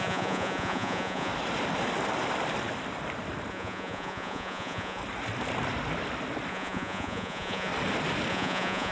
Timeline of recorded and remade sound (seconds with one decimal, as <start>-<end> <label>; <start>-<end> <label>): 0.0-1.3 remade; 1.3-3.5 recorded; 3.5-5.0 remade; 5.0-6.5 recorded; 6.5-7.7 remade; 7.7-8.3 recorded; 8.3-8.9 remade